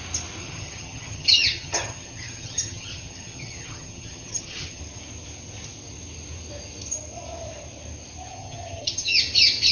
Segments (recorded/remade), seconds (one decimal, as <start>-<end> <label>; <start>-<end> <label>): 0.0-0.4 recorded; 0.4-4.8 remade; 4.8-8.3 recorded; 8.3-9.2 remade; 9.2-9.7 recorded